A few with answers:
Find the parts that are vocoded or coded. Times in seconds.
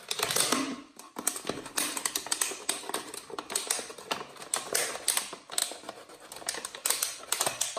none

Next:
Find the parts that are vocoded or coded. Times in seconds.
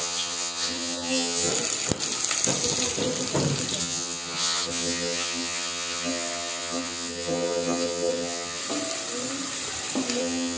0.0-1.5 (vocoder, HiFi-GAN); 3.8-8.6; 10.2-10.6